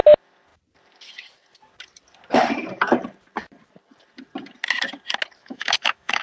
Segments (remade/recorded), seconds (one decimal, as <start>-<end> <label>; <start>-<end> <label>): 0.0-5.4 recorded; 5.4-6.2 remade